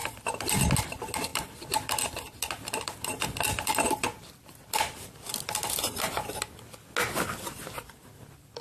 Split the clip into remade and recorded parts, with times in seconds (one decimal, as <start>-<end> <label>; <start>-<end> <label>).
0.0-0.7 remade; 0.7-1.3 recorded; 1.3-6.4 remade; 6.4-8.6 recorded